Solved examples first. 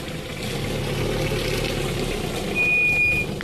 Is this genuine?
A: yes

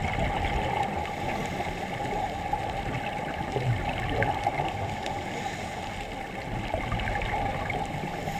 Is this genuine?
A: yes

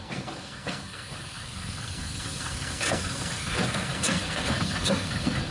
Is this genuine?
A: no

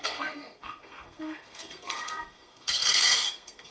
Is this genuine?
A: no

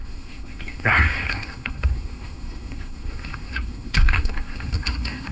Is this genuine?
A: no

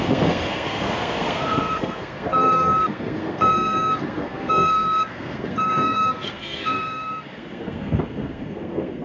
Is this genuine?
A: no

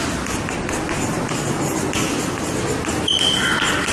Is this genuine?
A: yes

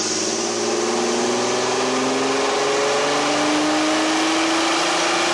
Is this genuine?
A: yes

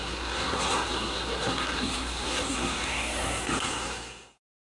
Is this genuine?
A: no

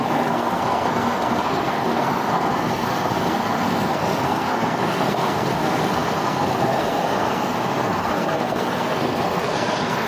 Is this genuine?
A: no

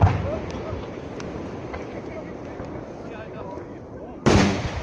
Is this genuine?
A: yes